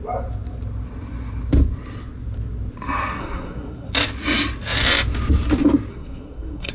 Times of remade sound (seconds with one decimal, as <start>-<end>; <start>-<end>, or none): 3.2-3.9; 5.9-6.7